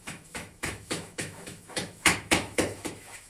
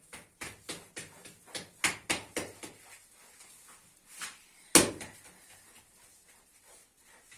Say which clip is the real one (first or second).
second